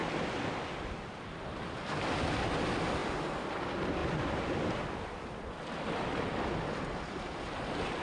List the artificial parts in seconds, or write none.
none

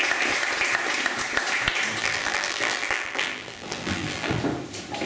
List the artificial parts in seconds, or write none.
2.0-4.4 (vocoder, BigVGAN v2)

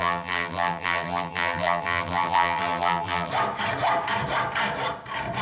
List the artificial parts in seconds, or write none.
0.0-3.3 (vocoder, BigVGAN v2)

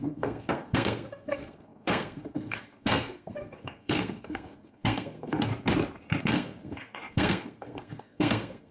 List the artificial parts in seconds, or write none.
0.0-5.5 (codec, SNAC); 6.2-8.7

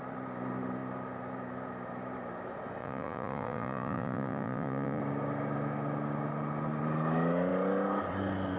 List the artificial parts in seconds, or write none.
2.8-5.0 (vocoder, Vocos)

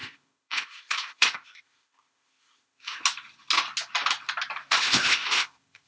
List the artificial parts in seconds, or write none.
0.0-3.0 (codec, ZipCodec); 4.7-5.9

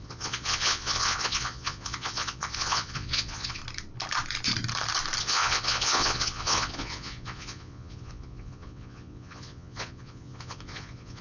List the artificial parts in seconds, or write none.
0.0-3.6 (vocoder, Vocos); 5.2-11.2